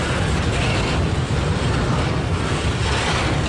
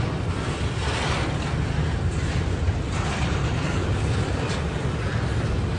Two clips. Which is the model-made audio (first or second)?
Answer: first